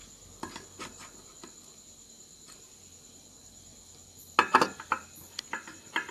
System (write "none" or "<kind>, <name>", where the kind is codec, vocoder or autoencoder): none